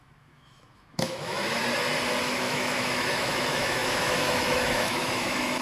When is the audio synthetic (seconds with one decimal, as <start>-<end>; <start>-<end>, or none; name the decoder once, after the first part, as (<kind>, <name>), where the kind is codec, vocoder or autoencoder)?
0.0-1.6 (autoencoder, DAC-VAE); 2.2-5.6